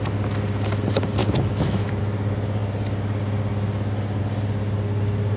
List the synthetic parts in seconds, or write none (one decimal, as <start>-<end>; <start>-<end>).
1.2-2.0